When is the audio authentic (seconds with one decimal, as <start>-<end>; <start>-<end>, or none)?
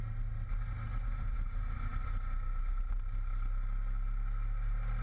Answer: 0.0-5.0